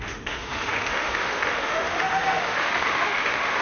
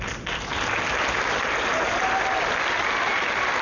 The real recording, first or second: second